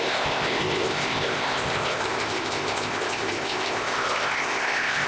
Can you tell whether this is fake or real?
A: fake